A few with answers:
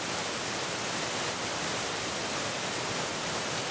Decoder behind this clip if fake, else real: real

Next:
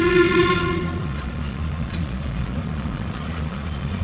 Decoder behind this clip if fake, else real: fake, vocoder, Vocos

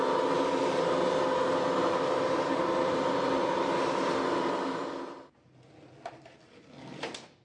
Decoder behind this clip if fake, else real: real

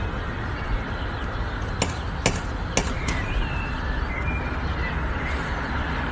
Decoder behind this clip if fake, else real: real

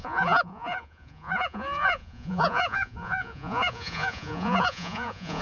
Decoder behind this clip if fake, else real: fake, vocoder, Vocos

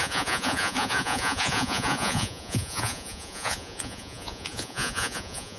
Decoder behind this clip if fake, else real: fake, vocoder, Vocos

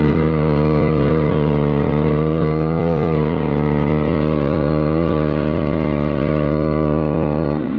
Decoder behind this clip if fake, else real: fake, vocoder, Vocos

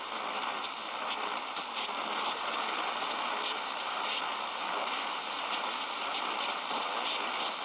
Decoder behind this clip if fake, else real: real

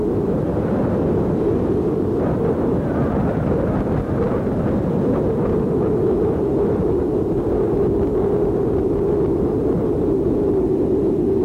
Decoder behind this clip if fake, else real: real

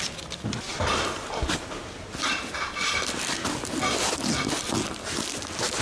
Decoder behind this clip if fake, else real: real